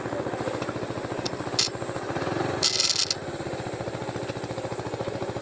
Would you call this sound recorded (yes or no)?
yes